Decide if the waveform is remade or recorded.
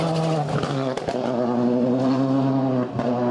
recorded